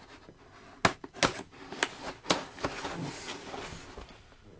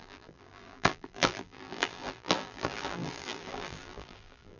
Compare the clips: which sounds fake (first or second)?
second